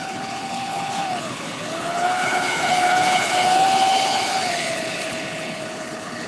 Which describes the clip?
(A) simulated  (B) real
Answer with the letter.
A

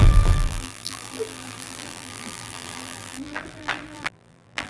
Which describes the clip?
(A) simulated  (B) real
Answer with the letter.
A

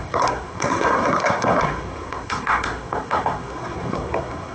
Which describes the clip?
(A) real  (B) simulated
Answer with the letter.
B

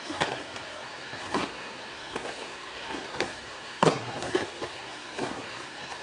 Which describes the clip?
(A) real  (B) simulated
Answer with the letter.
B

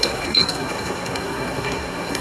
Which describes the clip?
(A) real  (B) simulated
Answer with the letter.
B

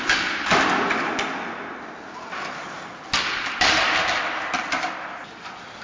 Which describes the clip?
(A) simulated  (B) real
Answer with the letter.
B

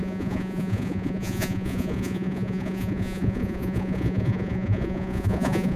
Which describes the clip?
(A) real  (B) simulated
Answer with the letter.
B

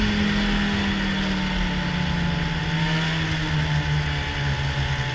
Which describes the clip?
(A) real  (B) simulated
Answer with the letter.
A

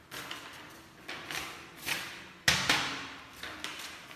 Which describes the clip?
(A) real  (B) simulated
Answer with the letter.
A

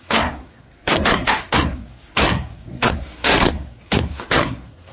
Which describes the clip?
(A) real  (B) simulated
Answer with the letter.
B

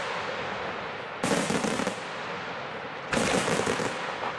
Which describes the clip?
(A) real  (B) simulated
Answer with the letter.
A